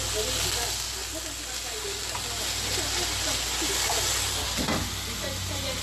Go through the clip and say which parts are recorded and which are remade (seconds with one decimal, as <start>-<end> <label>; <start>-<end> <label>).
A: 0.0-5.8 recorded